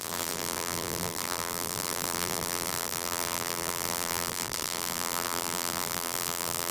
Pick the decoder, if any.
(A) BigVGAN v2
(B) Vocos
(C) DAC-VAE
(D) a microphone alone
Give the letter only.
A